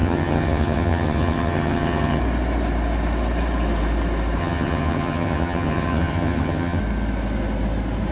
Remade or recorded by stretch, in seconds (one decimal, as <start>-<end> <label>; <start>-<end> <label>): 0.0-2.2 remade; 2.2-4.4 recorded; 4.4-6.8 remade; 6.8-8.1 recorded